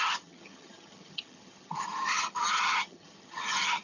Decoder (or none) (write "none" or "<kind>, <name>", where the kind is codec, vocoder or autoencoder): vocoder, HiFi-GAN